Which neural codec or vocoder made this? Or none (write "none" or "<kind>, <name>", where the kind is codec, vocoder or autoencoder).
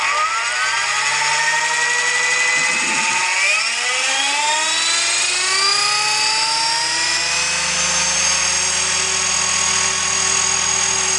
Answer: none